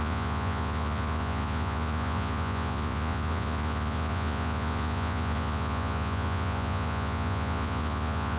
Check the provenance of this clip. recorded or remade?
remade